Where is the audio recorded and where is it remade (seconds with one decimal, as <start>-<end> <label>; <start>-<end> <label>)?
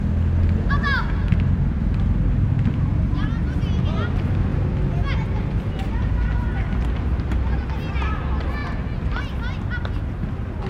0.0-10.7 recorded